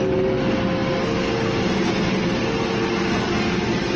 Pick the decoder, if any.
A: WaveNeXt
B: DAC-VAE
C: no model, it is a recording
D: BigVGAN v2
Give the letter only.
C